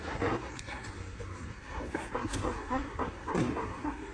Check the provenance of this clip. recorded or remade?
remade